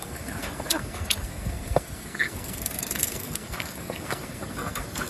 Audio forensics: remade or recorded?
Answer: remade